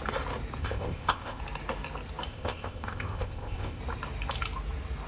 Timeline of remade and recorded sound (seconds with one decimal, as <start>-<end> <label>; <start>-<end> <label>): 0.0-0.6 recorded; 0.6-1.4 remade; 1.4-2.3 recorded; 2.3-3.8 remade; 3.8-5.1 recorded

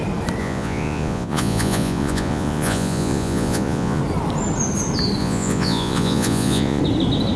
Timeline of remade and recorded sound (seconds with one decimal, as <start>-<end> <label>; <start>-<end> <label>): 0.0-0.4 recorded; 0.4-4.0 remade; 4.0-5.2 recorded; 5.2-6.8 remade; 6.8-7.4 recorded